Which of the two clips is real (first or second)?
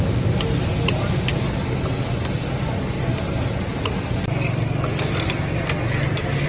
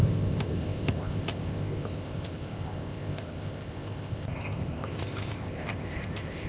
first